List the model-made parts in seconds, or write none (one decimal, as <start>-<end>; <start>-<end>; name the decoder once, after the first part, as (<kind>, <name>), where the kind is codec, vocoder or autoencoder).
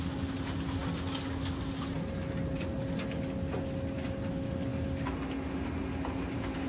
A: none